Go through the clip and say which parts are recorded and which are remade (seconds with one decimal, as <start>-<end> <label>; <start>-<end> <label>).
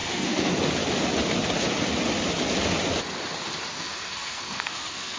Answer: 0.0-0.5 remade; 0.5-3.7 recorded; 3.7-5.2 remade